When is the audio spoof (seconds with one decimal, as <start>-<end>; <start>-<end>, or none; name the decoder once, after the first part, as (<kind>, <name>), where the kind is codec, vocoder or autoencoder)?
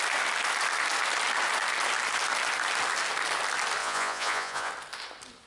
3.8-4.7 (vocoder, Vocos)